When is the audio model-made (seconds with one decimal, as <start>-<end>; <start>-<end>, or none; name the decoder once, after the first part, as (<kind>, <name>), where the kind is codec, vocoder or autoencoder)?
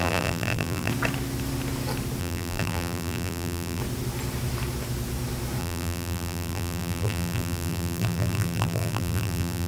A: 0.0-0.9 (vocoder, BigVGAN v2); 2.2-3.8; 5.6-9.7